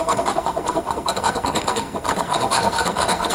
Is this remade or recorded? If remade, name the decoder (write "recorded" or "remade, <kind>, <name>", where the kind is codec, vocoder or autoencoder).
remade, codec, SNAC